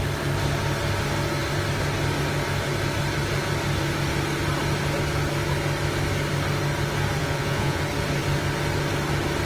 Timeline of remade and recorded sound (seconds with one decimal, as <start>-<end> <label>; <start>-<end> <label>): 0.0-7.2 recorded; 7.2-7.8 remade; 7.8-9.5 recorded